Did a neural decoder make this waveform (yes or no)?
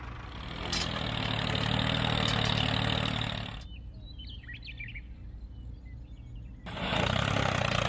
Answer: no